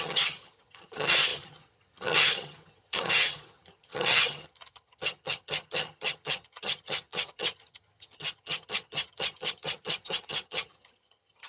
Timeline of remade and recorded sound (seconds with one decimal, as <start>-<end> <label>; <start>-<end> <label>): 0.0-11.5 remade